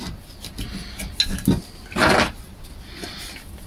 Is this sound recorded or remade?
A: recorded